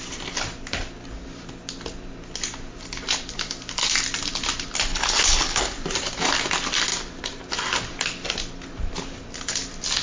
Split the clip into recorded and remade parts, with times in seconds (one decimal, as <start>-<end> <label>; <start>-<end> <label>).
0.0-4.9 recorded; 4.9-5.6 remade; 5.6-10.0 recorded